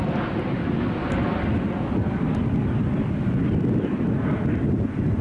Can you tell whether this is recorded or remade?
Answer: recorded